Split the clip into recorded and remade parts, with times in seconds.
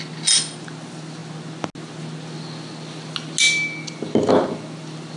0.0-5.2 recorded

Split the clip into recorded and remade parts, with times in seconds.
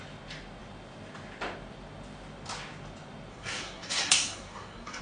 0.0-3.3 recorded; 3.3-5.0 remade